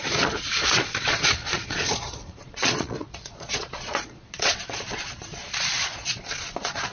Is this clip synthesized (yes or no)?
yes